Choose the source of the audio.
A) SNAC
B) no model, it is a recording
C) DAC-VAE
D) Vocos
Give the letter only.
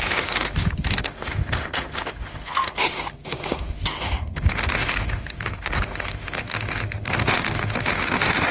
C